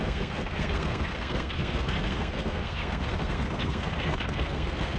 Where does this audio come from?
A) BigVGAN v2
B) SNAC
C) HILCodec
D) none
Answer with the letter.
B